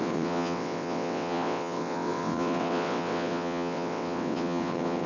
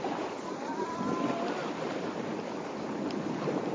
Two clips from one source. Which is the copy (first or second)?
first